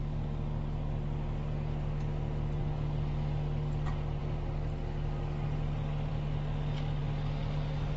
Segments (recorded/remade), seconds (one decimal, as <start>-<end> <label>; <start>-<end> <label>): 0.0-8.0 recorded